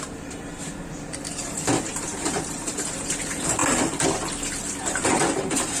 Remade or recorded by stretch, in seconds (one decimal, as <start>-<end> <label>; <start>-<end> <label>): 0.0-3.6 remade; 3.6-4.8 recorded; 4.8-5.8 remade